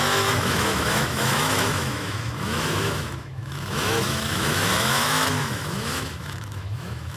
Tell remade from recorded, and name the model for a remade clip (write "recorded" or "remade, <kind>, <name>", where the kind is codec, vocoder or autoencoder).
remade, autoencoder, DAC-VAE